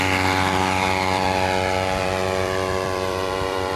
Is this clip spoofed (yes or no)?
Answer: yes